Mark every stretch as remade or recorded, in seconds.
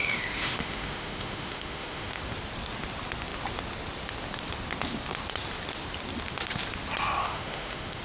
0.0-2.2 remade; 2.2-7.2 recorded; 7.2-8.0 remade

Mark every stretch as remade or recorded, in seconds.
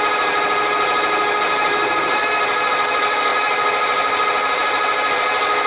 0.0-5.7 recorded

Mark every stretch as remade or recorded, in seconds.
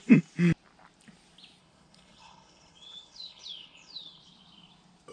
0.0-1.6 recorded; 1.6-4.2 remade; 4.2-5.1 recorded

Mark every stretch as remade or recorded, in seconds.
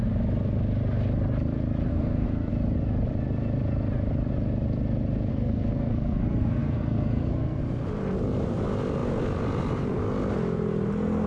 0.0-1.9 recorded; 1.9-2.5 remade; 2.5-5.3 recorded; 5.3-7.6 remade; 7.6-11.3 recorded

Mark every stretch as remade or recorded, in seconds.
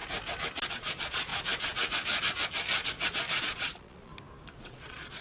0.0-0.7 recorded; 0.7-1.3 remade; 1.3-3.3 recorded; 3.3-4.1 remade; 4.1-4.6 recorded; 4.6-5.2 remade